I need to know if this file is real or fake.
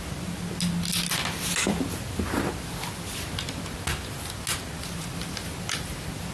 real